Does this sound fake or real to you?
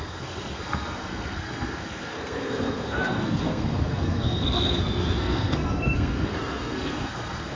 fake